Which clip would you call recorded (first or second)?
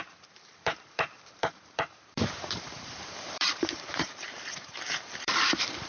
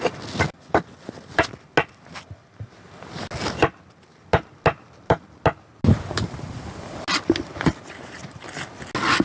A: second